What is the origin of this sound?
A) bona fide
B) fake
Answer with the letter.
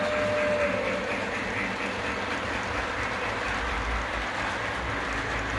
A